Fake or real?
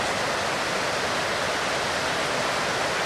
real